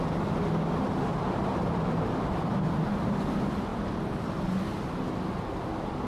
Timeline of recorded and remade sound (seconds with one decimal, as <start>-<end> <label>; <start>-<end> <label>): 0.0-1.1 recorded; 1.1-2.9 remade; 2.9-6.1 recorded